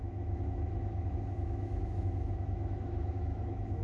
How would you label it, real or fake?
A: fake